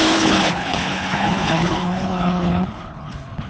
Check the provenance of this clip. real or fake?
fake